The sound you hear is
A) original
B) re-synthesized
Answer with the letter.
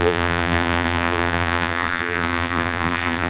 B